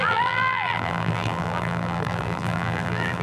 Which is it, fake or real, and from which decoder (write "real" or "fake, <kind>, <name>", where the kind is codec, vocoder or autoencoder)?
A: fake, vocoder, BigVGAN v2